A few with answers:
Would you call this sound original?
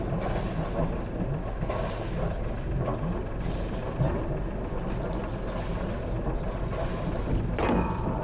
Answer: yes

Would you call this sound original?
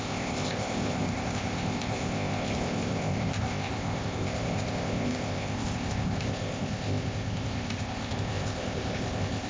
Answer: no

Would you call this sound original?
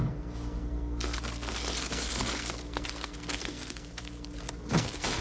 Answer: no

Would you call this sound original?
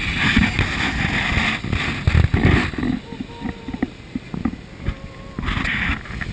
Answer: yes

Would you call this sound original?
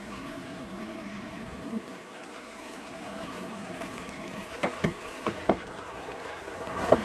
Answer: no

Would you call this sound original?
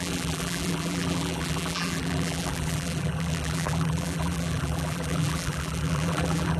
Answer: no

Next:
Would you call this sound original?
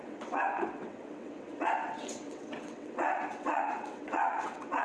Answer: no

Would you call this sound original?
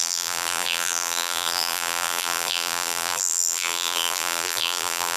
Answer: no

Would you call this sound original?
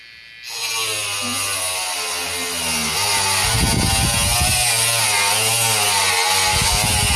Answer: yes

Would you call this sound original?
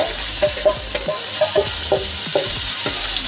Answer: yes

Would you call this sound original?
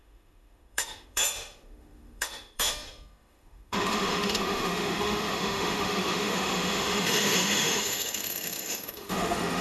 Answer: no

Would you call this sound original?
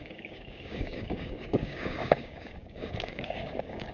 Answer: no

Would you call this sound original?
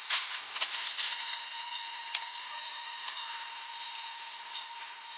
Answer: yes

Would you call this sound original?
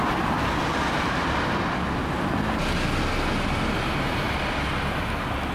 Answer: yes